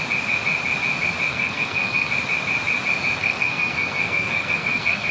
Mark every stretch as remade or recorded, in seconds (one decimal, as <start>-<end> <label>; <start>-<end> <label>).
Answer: 0.0-1.3 recorded; 1.3-2.1 remade; 2.1-3.2 recorded; 3.2-5.1 remade